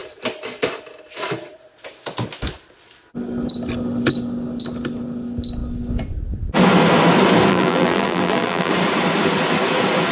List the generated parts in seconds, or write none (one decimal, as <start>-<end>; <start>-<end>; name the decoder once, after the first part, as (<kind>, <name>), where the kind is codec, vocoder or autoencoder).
7.5-8.7 (vocoder, BigVGAN v2)